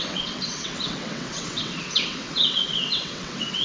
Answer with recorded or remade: remade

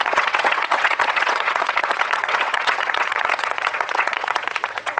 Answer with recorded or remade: remade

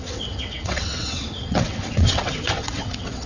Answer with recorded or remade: remade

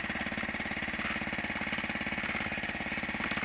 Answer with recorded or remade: recorded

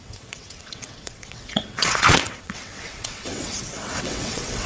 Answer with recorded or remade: remade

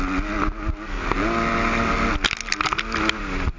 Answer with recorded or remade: recorded